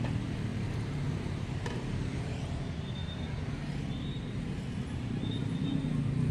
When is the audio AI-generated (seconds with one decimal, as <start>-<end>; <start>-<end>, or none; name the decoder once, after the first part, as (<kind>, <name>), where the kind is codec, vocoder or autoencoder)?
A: 0.5-2.2 (vocoder, BigVGAN v2)